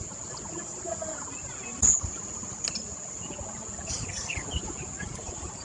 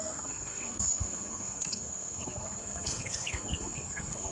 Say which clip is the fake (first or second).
second